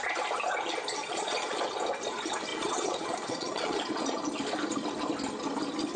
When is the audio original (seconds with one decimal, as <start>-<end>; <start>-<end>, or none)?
0.0-1.0; 1.6-2.5; 4.2-6.0